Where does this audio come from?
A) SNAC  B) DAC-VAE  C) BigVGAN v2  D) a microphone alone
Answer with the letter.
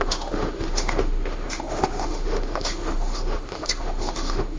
B